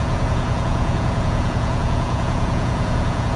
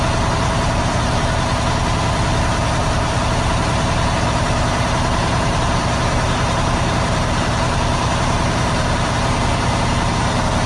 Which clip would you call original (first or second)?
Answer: second